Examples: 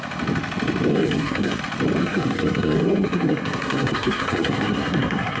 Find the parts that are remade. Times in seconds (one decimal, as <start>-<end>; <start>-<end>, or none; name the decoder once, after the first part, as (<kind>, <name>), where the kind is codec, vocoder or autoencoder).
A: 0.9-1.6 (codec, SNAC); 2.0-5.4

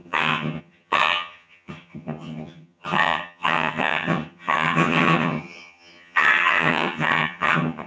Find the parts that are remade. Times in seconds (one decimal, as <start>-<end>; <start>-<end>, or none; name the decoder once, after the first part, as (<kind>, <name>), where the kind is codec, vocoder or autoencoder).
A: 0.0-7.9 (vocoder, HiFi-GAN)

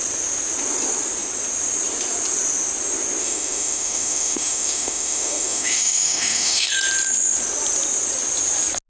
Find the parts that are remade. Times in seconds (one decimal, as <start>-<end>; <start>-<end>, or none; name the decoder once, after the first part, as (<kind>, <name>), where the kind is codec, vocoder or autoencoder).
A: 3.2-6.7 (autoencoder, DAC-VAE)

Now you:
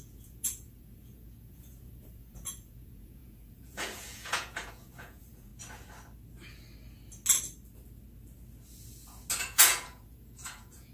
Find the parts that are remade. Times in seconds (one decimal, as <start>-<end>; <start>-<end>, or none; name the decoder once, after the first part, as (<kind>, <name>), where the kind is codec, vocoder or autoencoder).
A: 0.0-5.5 (vocoder, Vocos); 9.4-10.9